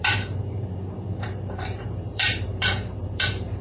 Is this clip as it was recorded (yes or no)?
no